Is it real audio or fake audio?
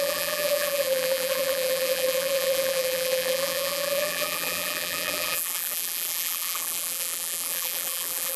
fake